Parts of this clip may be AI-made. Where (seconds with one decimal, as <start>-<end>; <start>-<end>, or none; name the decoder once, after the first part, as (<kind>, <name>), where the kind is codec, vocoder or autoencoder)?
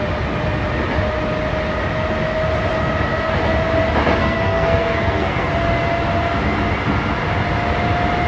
4.2-5.5 (codec, SNAC)